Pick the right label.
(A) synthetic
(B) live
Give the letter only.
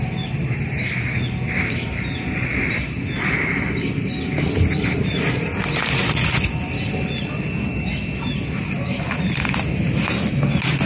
B